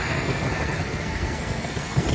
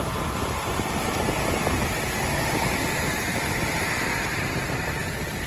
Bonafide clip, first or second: second